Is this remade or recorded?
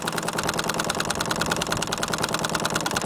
recorded